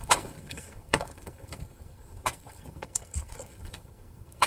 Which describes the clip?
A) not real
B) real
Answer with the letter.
A